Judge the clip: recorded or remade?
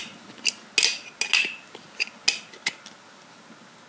recorded